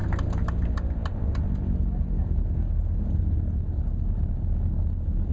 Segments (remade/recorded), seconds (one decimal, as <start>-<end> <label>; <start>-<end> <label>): 0.0-5.3 recorded